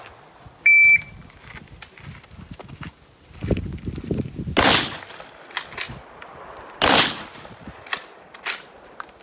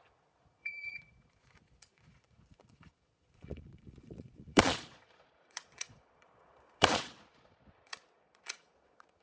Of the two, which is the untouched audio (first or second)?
first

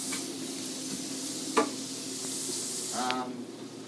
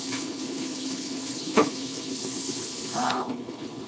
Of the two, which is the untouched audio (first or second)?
first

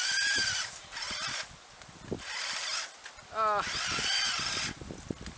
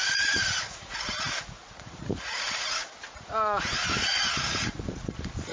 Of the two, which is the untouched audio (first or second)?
first